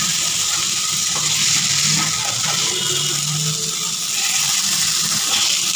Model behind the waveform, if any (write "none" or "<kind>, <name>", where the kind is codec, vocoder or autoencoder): none